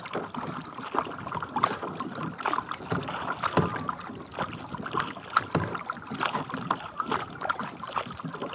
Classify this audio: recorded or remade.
recorded